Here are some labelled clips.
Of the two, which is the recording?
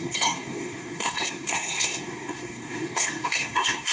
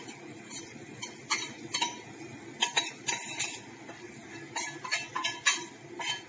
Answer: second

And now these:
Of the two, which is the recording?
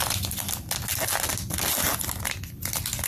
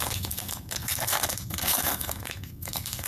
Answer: first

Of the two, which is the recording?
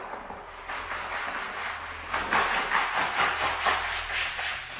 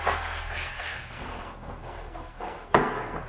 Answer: first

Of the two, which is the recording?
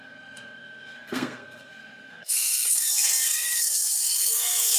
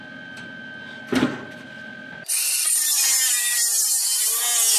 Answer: second